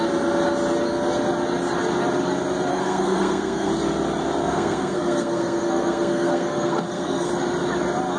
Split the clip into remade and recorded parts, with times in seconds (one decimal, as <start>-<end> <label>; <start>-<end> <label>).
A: 0.0-2.7 recorded; 2.7-3.7 remade; 3.7-4.4 recorded; 4.4-7.3 remade; 7.3-8.2 recorded